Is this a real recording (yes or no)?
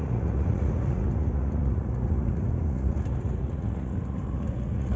no